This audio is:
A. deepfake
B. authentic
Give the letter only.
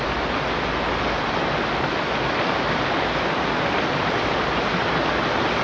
B